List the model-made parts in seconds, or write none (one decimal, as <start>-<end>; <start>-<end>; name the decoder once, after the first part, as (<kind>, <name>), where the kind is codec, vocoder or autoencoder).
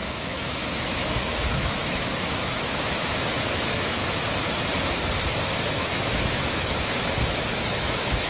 0.0-4.0 (autoencoder, DAC-VAE); 5.7-8.3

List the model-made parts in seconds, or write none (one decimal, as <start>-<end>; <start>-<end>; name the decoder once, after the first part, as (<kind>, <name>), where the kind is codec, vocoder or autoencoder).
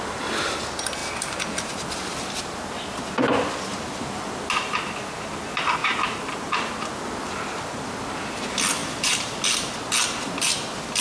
1.0-1.9 (vocoder, BigVGAN v2); 5.8-6.7; 8.8-9.4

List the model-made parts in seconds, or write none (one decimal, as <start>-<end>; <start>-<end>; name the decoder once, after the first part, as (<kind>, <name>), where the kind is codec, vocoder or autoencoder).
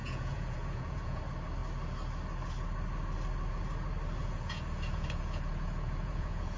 0.0-1.2 (vocoder, Vocos); 4.2-6.6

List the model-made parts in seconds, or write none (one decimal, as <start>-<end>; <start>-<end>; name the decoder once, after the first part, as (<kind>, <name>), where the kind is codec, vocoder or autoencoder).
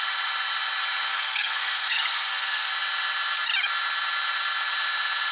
1.1-2.7 (codec, SNAC)